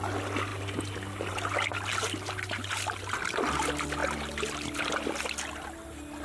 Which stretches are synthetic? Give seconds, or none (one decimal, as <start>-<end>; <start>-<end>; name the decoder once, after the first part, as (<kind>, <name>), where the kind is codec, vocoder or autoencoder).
none